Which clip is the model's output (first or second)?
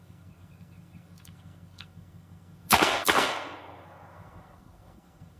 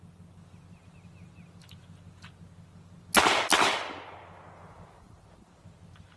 first